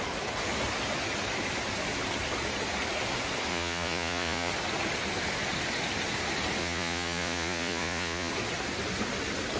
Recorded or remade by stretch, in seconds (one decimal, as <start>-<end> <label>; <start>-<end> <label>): 0.0-3.5 recorded; 3.5-4.5 remade; 4.5-6.6 recorded; 6.6-8.3 remade; 8.3-9.6 recorded